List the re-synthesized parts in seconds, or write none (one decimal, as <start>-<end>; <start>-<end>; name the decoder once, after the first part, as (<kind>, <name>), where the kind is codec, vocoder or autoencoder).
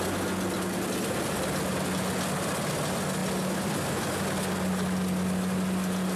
none